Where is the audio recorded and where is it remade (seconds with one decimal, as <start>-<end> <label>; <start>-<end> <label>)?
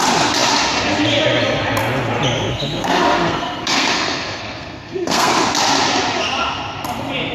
0.0-2.5 recorded; 2.5-5.3 remade; 5.3-7.3 recorded